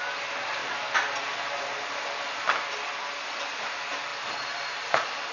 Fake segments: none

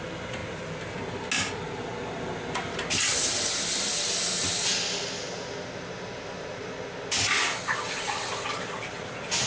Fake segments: none